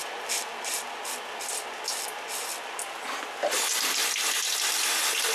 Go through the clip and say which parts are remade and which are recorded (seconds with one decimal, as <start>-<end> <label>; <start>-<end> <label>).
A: 0.0-3.2 remade; 3.2-4.0 recorded; 4.0-4.5 remade; 4.5-5.3 recorded